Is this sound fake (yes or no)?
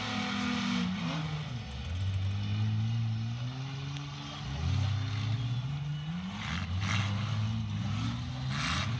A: no